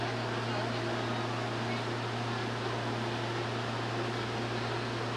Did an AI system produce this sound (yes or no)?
no